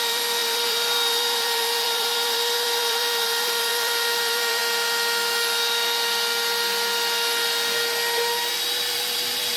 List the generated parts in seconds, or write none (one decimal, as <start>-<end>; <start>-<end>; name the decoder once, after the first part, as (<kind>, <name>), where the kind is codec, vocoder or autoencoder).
0.0-4.6 (vocoder, BigVGAN v2); 8.5-9.6